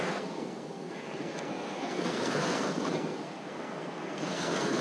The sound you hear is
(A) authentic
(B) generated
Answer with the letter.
B